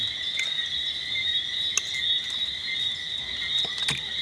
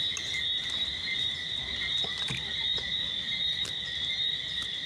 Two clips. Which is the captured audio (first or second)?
first